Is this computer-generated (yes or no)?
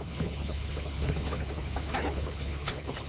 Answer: yes